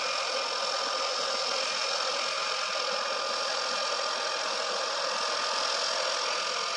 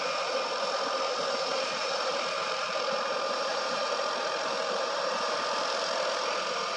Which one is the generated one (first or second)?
second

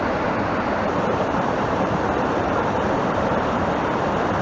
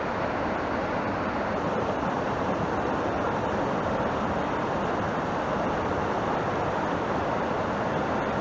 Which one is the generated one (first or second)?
first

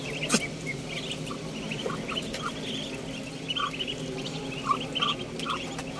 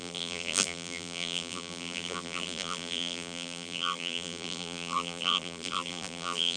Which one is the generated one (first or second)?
second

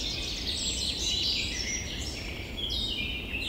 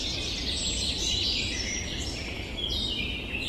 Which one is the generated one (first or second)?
second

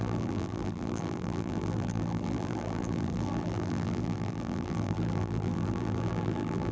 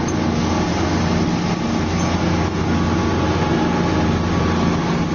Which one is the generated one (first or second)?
first